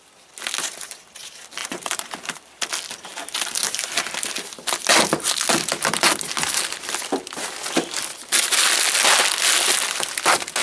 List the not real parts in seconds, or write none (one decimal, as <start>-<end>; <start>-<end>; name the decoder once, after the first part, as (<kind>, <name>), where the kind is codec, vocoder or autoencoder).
1.6-2.7 (vocoder, BigVGAN v2)